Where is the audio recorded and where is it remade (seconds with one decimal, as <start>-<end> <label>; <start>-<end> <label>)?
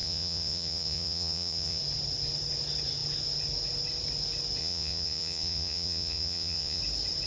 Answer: 0.0-1.8 remade; 1.8-4.6 recorded; 4.6-6.8 remade; 6.8-7.3 recorded